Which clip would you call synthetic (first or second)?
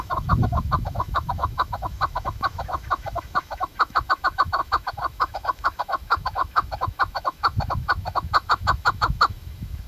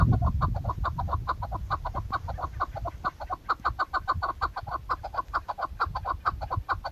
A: first